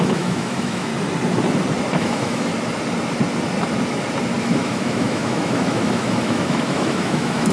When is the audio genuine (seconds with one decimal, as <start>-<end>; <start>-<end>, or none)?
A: 0.9-2.0; 2.5-4.4